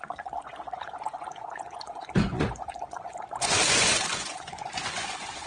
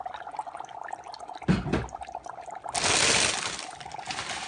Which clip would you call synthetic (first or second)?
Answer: first